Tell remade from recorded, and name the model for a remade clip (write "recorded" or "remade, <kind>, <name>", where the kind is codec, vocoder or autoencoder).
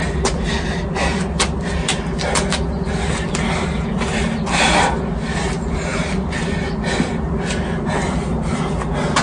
recorded